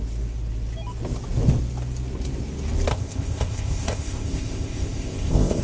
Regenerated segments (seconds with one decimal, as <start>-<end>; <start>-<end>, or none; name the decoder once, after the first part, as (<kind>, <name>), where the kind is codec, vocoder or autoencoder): 2.9-5.6 (codec, ZipCodec)